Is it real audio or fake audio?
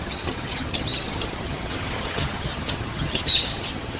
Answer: fake